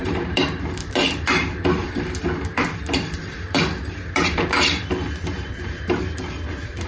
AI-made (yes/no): yes